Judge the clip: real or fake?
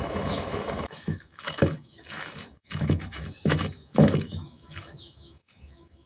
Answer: fake